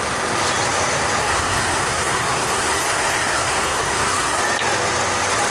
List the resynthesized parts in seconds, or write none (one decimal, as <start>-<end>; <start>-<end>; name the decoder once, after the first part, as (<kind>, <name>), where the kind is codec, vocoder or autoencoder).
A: 1.2-4.4 (codec, SNAC)